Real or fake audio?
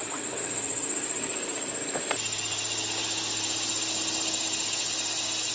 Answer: real